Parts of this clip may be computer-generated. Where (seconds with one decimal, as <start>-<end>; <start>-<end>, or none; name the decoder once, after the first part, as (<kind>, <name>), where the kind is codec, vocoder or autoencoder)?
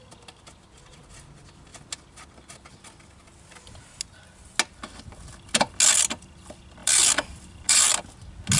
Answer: 6.8-8.0 (vocoder, BigVGAN v2)